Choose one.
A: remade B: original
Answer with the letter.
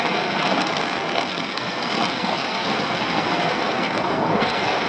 A